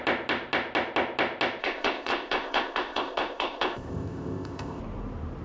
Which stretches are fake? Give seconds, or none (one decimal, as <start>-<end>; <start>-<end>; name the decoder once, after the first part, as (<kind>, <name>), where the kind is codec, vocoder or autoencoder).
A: 1.6-4.8 (codec, ZipCodec)